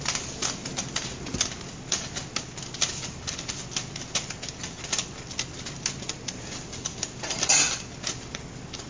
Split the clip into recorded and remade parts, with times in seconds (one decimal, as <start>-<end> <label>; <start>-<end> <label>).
0.0-8.9 recorded